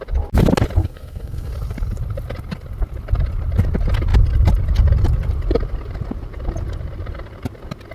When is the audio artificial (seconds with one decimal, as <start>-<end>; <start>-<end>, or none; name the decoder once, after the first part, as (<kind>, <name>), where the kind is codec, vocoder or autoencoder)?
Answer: 0.8-1.5 (codec, SNAC)